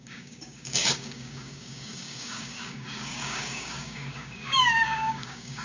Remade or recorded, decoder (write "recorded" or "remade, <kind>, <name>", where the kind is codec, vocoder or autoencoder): remade, codec, DAC